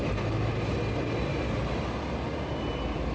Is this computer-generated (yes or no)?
no